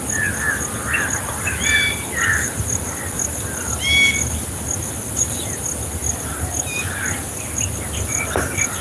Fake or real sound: real